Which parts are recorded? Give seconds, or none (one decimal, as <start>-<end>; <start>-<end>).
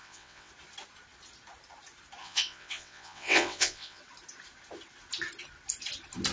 0.5-2.2; 4.0-6.3